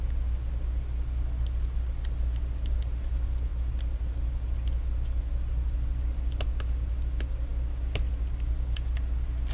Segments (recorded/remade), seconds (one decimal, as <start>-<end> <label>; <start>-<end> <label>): 0.0-9.5 recorded